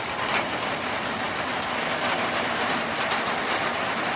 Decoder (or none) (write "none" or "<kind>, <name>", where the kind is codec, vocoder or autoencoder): none